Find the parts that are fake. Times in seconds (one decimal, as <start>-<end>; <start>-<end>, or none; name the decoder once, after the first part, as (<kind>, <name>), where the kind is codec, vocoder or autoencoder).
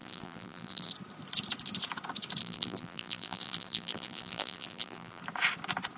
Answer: 0.0-0.9 (vocoder, BigVGAN v2); 2.4-5.2